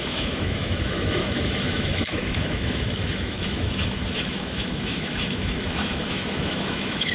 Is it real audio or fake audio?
fake